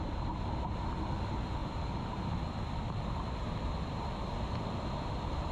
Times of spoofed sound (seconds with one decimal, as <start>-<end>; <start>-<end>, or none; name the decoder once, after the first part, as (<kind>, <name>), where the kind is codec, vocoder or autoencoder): none